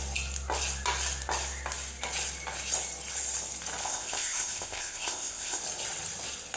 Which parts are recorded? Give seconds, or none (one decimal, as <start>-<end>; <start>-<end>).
0.0-3.8; 5.6-6.6